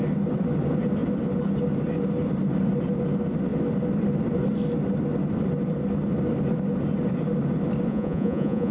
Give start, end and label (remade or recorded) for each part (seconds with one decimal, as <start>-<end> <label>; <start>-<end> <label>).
0.0-7.9 recorded; 7.9-8.7 remade